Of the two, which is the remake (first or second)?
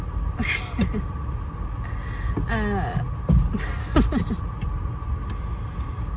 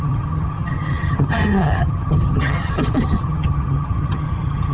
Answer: second